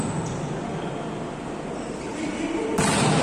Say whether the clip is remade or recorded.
recorded